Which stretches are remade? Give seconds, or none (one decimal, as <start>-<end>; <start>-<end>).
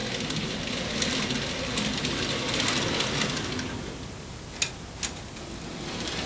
none